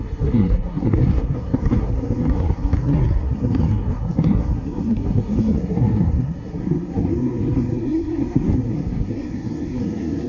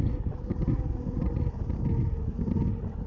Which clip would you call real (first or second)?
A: second